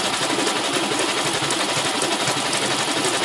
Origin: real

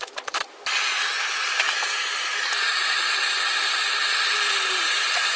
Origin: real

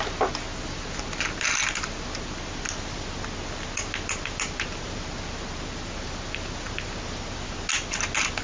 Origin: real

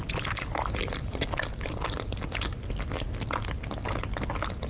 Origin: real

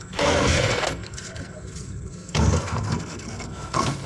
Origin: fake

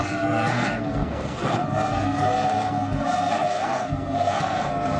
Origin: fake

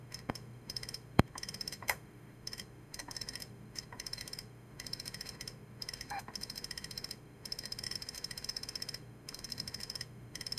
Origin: fake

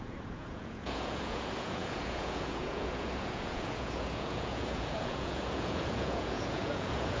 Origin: fake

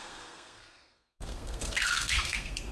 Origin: fake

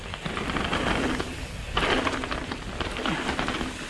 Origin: real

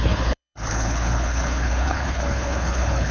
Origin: fake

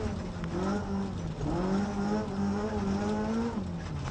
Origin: real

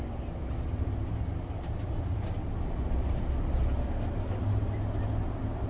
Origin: real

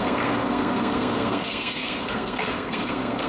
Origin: fake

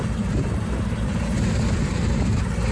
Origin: real